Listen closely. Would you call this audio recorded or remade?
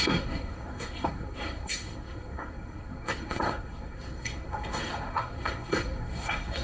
remade